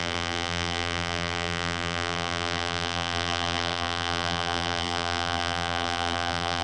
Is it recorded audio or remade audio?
remade